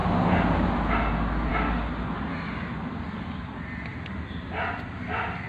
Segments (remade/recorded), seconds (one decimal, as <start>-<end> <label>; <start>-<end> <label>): 0.0-5.5 recorded